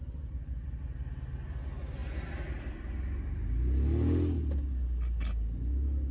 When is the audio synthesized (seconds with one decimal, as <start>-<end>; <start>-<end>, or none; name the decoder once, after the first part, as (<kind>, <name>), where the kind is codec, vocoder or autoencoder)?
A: none